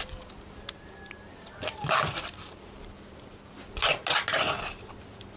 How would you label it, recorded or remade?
recorded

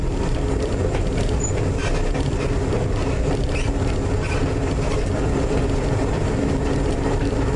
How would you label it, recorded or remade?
recorded